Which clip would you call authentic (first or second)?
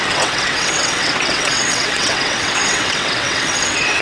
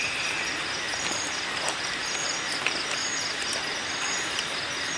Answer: second